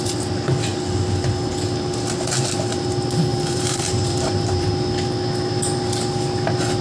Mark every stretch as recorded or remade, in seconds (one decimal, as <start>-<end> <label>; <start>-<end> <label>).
0.0-3.3 recorded; 3.3-4.7 remade; 4.7-6.8 recorded